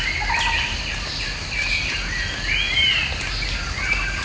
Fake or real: real